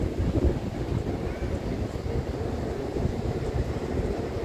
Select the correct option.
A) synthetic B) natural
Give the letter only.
B